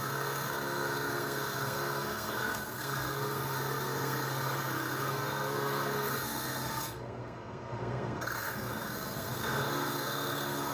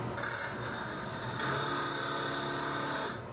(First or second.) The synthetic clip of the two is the first